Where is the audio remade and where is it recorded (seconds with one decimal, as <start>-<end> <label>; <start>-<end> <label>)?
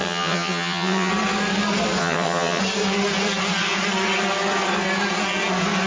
0.0-1.1 remade; 1.1-2.0 recorded; 2.0-2.6 remade; 2.6-5.9 recorded